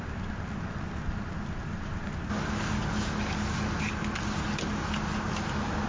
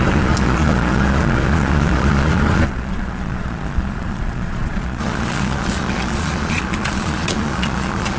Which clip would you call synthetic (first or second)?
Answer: second